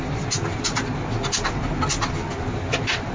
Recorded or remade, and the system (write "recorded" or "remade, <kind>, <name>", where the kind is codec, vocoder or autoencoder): recorded